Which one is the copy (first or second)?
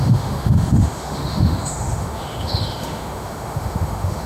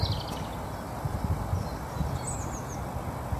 first